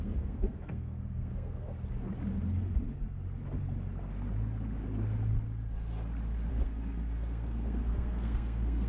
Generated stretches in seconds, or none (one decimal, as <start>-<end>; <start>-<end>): 0.0-1.7; 6.5-8.9